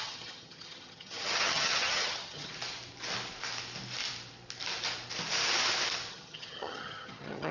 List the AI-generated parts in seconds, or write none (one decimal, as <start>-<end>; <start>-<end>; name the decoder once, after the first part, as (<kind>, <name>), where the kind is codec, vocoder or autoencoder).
0.0-2.5 (vocoder, HiFi-GAN); 6.1-7.5